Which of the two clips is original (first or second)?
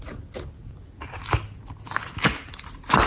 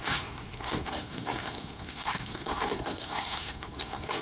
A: first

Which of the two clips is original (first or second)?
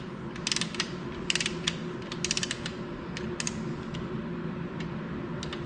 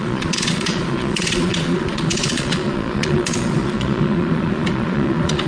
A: first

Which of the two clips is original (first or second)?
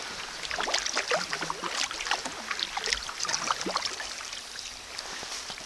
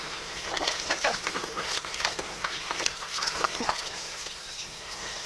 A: first